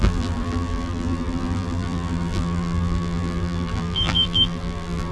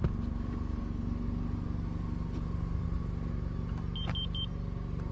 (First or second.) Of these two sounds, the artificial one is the first